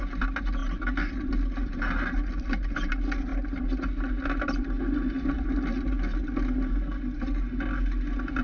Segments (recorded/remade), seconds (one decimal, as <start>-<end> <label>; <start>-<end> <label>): 0.0-8.4 recorded